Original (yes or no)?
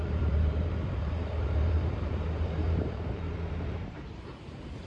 no